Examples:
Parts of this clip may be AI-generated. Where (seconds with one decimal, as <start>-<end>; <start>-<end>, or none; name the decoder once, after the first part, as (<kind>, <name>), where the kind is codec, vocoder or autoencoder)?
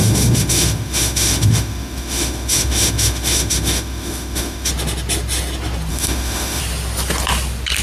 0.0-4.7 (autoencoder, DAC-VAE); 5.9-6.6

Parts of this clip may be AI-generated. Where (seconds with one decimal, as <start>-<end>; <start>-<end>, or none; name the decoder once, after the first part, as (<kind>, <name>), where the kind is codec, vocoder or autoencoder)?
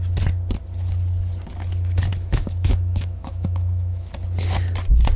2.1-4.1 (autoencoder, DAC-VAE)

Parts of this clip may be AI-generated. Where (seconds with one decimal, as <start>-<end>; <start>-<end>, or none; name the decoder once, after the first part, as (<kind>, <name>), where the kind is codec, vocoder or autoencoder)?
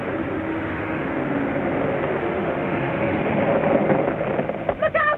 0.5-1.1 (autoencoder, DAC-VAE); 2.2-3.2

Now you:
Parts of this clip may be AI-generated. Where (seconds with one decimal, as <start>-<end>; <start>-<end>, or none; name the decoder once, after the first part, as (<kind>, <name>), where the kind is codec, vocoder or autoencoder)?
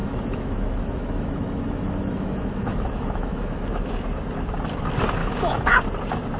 0.0-3.8 (autoencoder, DAC-VAE); 5.2-5.7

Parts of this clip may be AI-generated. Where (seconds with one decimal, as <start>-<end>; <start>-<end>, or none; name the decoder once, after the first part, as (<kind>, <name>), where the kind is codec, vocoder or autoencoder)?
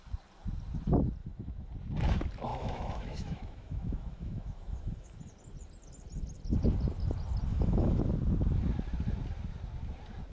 1.2-1.7 (autoencoder, DAC-VAE); 2.5-5.2; 7.5-8.0